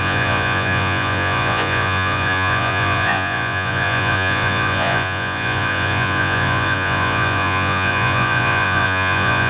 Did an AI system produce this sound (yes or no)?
yes